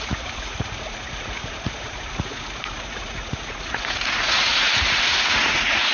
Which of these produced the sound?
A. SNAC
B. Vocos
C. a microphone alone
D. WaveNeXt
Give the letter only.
B